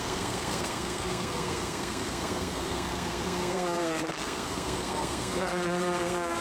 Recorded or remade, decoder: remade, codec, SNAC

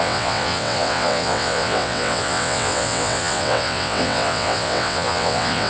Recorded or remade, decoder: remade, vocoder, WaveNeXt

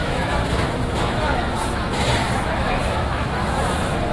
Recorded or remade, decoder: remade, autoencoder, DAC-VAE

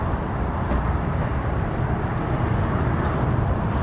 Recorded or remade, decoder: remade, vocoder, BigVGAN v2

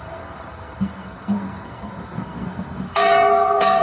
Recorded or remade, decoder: remade, codec, SNAC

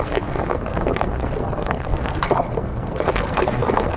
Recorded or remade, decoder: remade, codec, SNAC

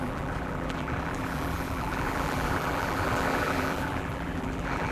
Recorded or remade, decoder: remade, vocoder, BigVGAN v2